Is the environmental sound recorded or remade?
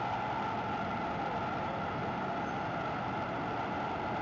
recorded